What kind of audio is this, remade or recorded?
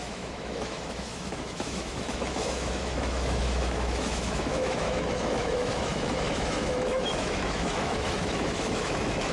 remade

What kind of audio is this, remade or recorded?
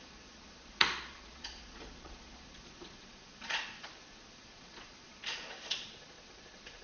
remade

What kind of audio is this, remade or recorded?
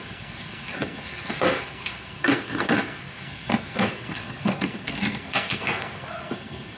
remade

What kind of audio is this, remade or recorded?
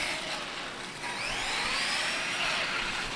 recorded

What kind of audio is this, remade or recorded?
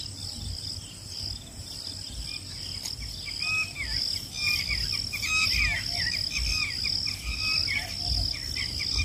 recorded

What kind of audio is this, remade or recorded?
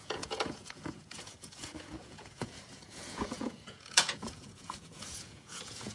remade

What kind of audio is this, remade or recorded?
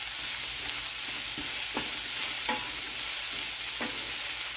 recorded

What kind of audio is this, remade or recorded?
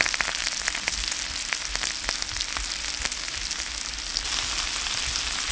recorded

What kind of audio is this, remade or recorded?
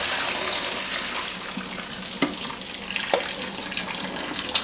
recorded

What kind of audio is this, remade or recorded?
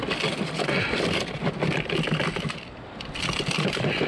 recorded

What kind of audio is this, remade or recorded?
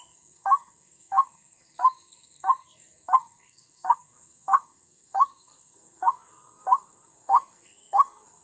remade